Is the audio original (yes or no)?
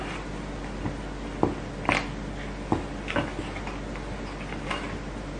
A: yes